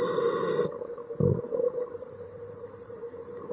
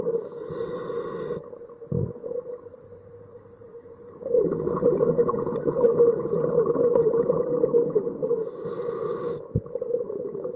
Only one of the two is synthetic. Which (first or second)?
first